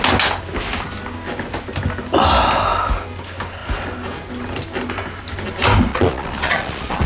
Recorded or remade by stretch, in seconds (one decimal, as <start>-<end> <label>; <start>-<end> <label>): 0.0-5.9 recorded; 5.9-7.1 remade